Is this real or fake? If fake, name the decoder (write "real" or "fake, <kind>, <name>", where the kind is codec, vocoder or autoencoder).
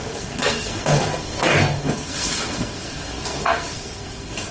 fake, codec, SNAC